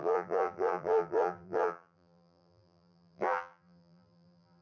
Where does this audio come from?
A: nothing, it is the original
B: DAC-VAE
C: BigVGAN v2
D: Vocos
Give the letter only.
C